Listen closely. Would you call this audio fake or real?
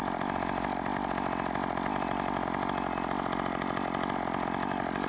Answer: real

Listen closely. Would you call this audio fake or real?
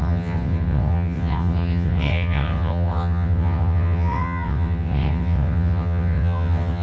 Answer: fake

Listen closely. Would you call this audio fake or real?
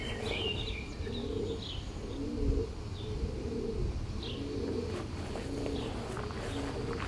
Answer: real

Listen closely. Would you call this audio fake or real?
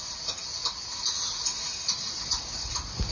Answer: real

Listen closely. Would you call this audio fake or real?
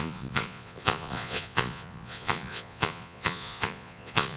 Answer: fake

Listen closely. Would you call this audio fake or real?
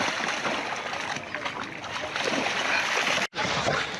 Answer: real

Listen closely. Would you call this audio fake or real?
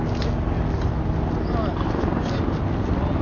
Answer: real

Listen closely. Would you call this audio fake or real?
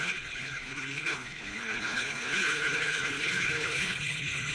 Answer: fake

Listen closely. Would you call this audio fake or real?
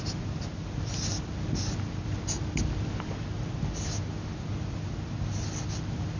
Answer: real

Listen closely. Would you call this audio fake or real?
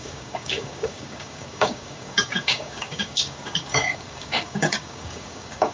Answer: fake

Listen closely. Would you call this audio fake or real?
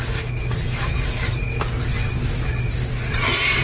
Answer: real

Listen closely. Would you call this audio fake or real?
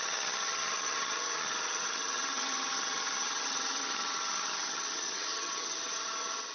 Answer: fake